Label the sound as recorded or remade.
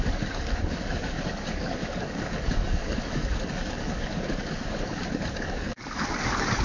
remade